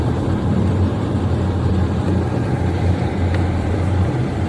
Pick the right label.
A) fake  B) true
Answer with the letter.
A